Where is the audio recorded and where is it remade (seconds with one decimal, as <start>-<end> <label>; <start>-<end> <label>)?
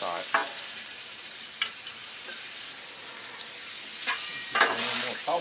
0.0-0.4 recorded; 0.4-2.9 remade; 2.9-5.4 recorded